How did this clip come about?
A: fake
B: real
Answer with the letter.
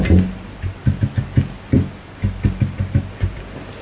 B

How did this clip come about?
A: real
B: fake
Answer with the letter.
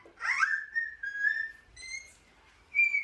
A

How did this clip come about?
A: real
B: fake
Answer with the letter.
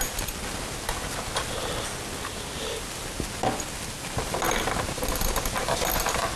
A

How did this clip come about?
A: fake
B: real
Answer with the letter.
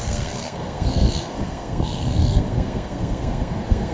A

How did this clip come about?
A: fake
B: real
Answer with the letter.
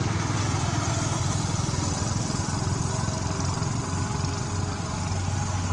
B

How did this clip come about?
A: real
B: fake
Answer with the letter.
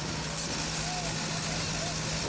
A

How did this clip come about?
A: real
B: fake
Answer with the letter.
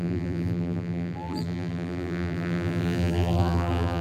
B